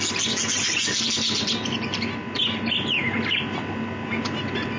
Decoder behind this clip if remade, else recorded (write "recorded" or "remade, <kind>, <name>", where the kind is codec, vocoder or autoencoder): recorded